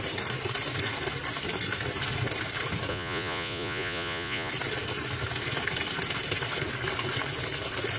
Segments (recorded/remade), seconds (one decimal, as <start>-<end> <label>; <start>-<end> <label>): 0.0-2.9 recorded; 2.9-4.5 remade; 4.5-8.0 recorded